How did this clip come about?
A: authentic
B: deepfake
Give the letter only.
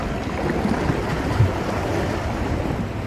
A